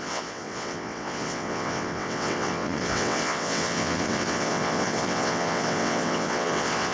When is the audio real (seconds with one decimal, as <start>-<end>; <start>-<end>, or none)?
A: none